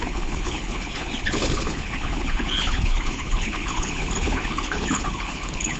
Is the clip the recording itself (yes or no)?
no